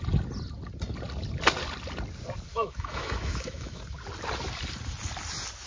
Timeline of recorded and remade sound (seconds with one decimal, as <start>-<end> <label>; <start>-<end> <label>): 0.0-2.5 recorded; 2.5-3.8 remade; 3.8-5.7 recorded